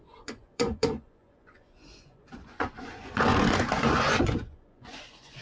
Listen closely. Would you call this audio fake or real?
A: fake